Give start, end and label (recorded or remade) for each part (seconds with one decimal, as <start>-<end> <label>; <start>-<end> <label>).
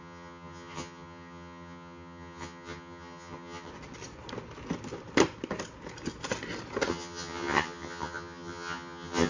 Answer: 0.0-3.7 remade; 3.7-6.9 recorded; 6.9-9.3 remade